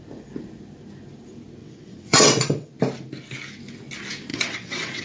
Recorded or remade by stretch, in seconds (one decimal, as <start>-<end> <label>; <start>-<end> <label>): 0.0-1.6 recorded; 1.6-2.7 remade; 2.7-4.3 recorded; 4.3-5.0 remade